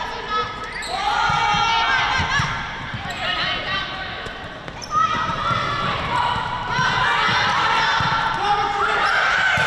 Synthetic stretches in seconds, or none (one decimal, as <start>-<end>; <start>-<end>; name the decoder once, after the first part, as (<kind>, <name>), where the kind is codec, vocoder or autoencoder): 0.0-0.8 (vocoder, BigVGAN v2); 2.6-5.3; 9.1-9.7

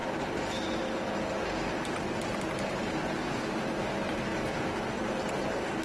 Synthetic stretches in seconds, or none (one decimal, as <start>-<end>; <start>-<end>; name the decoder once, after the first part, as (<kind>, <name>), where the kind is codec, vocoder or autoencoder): none

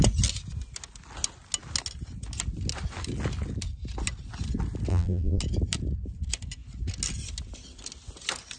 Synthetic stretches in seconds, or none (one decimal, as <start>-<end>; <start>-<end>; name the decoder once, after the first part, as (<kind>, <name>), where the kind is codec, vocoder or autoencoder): 4.9-5.4 (vocoder, BigVGAN v2)

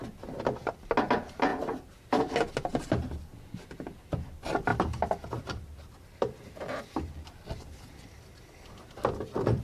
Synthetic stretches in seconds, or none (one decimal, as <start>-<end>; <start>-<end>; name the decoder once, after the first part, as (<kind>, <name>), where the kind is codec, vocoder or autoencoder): 4.7-9.6 (vocoder, BigVGAN v2)

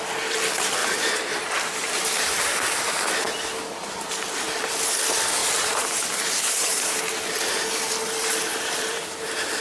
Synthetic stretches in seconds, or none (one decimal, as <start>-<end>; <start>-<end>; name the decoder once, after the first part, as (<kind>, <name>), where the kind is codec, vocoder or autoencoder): 0.8-3.1 (vocoder, BigVGAN v2); 5.4-7.0; 8.5-9.6